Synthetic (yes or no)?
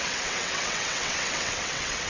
yes